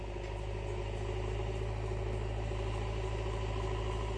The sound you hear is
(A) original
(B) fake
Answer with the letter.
A